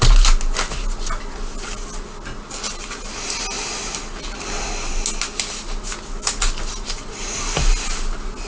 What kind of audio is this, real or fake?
real